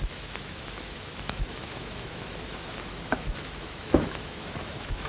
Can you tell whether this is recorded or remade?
remade